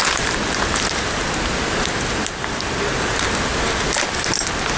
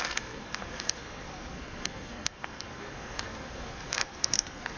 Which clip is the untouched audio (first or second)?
first